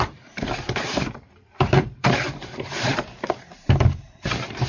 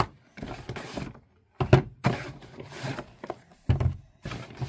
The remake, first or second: first